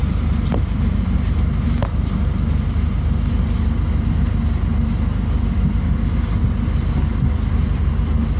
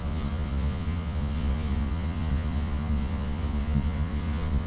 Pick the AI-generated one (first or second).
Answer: second